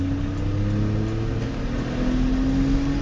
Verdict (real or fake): real